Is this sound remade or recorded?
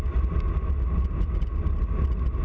recorded